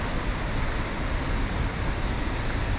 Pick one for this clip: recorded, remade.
recorded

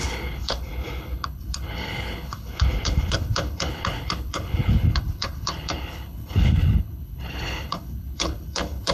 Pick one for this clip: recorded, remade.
remade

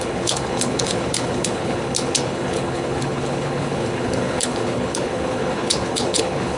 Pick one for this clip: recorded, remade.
remade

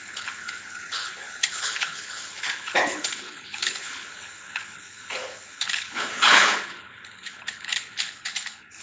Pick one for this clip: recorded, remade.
remade